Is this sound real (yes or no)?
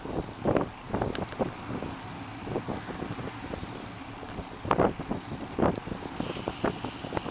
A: yes